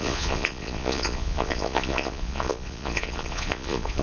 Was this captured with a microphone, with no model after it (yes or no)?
no